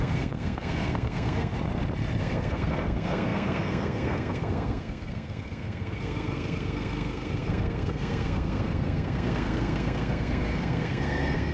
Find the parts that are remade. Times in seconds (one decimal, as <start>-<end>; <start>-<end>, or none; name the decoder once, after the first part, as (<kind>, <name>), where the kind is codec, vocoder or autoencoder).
0.0-1.5 (codec, SNAC); 2.2-11.5